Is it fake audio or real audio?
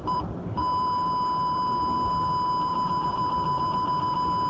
fake